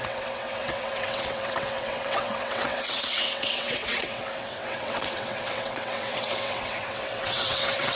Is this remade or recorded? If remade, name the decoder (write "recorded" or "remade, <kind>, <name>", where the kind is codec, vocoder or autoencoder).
remade, vocoder, WaveNeXt